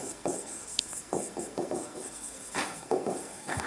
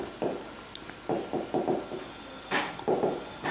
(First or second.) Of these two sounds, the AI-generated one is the first